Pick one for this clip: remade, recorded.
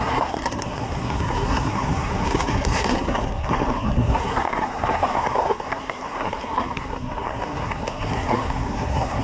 remade